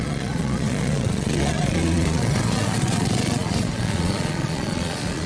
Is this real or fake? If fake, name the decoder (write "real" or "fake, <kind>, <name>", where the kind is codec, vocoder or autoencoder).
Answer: fake, vocoder, Vocos